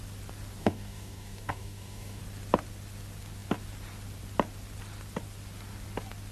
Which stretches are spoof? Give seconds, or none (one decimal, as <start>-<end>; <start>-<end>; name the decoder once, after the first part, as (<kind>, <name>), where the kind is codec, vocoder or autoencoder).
0.6-2.2 (codec, DAC)